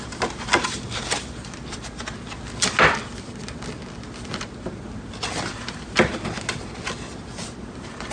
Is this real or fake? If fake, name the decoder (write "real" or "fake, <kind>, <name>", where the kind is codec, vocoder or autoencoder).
real